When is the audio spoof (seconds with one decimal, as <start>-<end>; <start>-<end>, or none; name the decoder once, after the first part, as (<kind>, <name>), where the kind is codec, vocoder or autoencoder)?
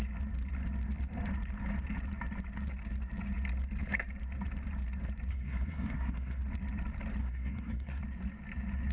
5.3-6.4 (codec, SNAC); 7.2-8.0